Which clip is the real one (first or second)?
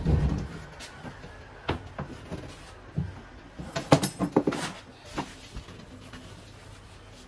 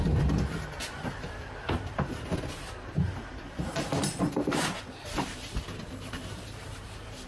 first